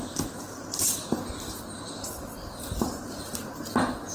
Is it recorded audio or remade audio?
remade